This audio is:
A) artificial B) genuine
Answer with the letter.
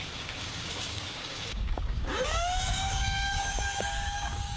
A